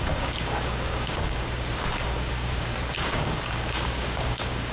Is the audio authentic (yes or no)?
no